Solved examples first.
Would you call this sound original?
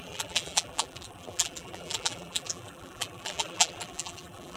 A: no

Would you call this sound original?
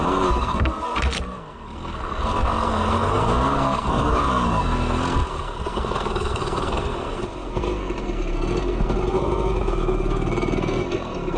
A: no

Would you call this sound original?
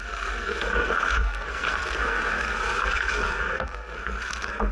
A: no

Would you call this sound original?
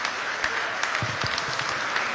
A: yes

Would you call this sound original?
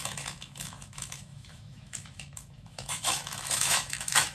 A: no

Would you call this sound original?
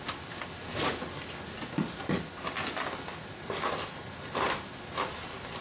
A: yes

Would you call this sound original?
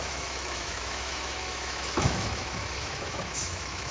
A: no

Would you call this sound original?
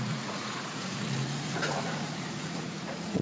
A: no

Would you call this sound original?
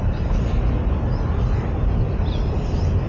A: yes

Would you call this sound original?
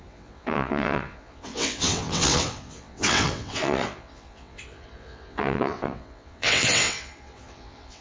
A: no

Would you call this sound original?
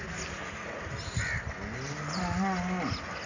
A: yes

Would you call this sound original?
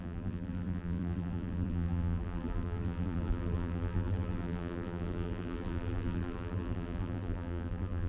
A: no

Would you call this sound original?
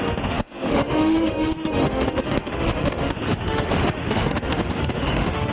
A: no